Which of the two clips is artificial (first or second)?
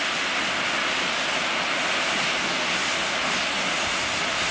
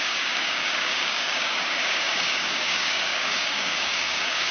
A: second